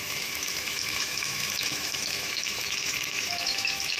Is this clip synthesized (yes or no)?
yes